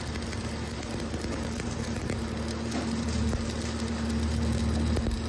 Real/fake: real